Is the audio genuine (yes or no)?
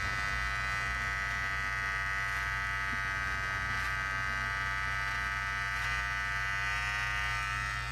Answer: yes